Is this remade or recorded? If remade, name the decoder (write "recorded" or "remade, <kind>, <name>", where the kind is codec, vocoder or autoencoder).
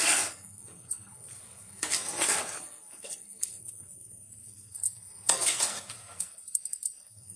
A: remade, codec, SNAC